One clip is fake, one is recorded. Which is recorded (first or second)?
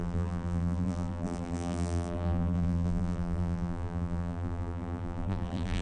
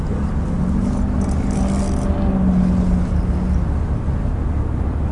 second